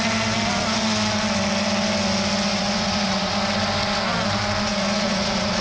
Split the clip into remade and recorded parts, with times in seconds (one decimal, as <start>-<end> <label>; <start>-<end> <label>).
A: 0.0-2.5 recorded; 2.5-3.3 remade; 3.3-4.7 recorded; 4.7-5.6 remade